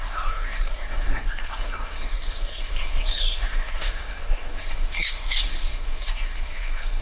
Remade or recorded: remade